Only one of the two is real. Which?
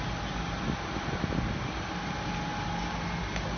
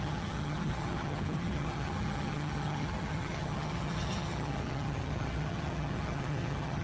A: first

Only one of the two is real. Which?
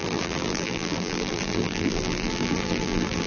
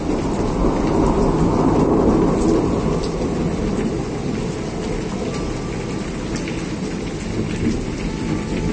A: second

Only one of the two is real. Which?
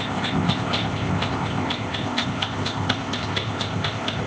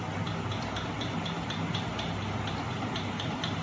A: second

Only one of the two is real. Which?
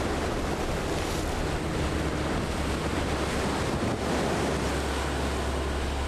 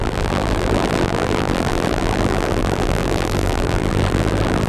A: first